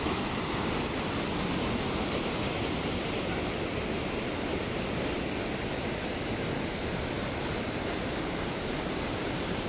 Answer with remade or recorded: recorded